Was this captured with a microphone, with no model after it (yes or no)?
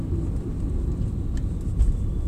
yes